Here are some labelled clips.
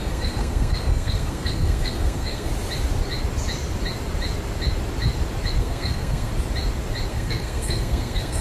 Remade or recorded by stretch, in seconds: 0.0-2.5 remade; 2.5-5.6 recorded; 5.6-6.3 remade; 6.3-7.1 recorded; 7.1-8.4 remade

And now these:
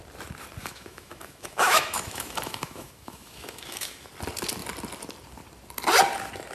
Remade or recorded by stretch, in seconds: 0.0-0.6 recorded; 0.6-4.1 remade; 4.1-6.5 recorded

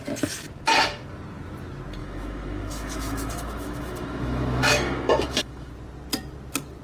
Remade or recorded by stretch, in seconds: 0.0-2.0 recorded; 2.0-5.7 remade; 5.7-6.8 recorded

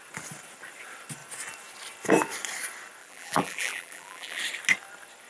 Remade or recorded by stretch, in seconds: 0.0-3.0 recorded; 3.0-4.4 remade; 4.4-5.3 recorded

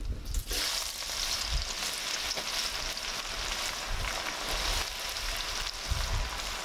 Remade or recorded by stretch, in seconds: 0.0-6.6 recorded

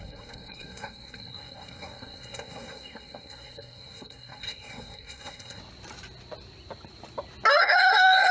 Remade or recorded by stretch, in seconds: 0.0-5.6 remade; 5.6-7.6 recorded; 7.6-8.3 remade

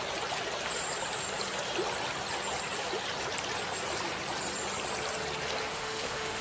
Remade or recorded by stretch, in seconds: 0.0-5.7 recorded; 5.7-6.4 remade

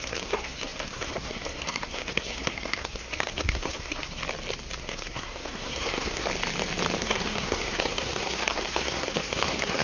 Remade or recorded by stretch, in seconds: 0.0-4.2 remade; 4.2-4.8 recorded; 4.8-6.3 remade; 6.3-7.0 recorded; 7.0-9.8 remade